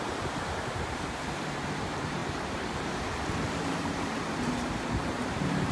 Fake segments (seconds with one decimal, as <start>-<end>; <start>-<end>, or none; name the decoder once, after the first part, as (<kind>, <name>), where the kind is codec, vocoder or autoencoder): 0.0-5.7 (vocoder, BigVGAN v2)